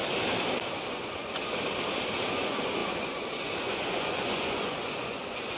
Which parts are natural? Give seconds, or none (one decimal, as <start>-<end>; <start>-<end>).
0.0-0.9; 1.4-2.3